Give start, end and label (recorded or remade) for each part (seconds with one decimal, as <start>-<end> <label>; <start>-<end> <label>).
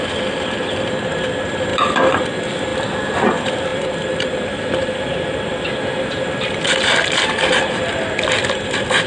0.0-1.7 recorded; 1.7-2.3 remade; 2.3-9.1 recorded